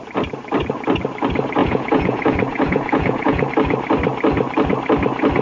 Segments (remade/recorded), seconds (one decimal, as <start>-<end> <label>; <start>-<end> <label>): 0.0-1.6 recorded; 1.6-3.5 remade; 3.5-5.4 recorded